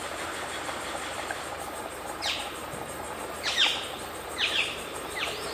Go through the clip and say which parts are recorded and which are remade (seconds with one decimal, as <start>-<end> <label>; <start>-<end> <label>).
0.0-2.6 remade; 2.6-3.2 recorded; 3.2-5.5 remade